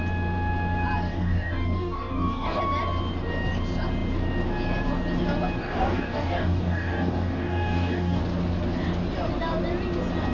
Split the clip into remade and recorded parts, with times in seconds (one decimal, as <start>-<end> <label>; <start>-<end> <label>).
0.0-1.1 recorded; 1.1-2.6 remade; 2.6-5.6 recorded; 5.6-8.2 remade; 8.2-10.3 recorded